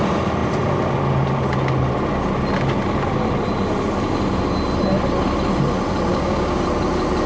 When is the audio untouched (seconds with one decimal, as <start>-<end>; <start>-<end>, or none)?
0.0-6.1; 6.6-7.3